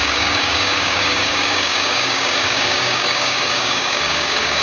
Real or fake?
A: fake